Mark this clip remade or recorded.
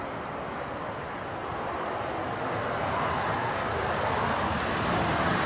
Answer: recorded